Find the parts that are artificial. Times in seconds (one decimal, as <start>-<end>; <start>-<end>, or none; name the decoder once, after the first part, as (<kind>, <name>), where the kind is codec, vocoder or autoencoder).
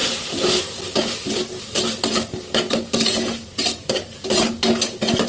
0.0-0.6 (vocoder, BigVGAN v2); 3.4-4.2